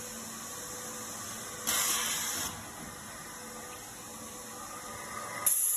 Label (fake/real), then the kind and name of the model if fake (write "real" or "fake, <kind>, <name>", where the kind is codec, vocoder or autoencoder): real